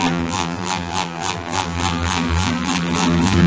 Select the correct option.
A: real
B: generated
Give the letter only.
B